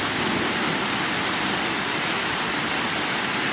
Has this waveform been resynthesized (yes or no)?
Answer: no